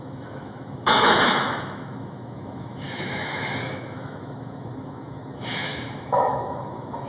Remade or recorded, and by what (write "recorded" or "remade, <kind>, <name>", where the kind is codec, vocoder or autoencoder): remade, autoencoder, DAC-VAE